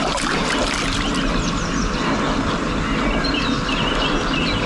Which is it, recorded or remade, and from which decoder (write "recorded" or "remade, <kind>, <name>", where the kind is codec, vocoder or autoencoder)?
recorded